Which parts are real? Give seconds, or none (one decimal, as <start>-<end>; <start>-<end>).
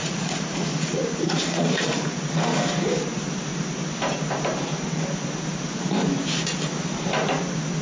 2.2-7.8